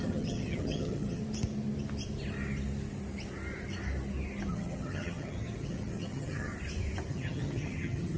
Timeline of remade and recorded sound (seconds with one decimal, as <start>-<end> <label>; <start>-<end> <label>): 0.0-1.2 remade; 1.2-4.5 recorded; 4.5-6.5 remade; 6.5-7.1 recorded; 7.1-8.2 remade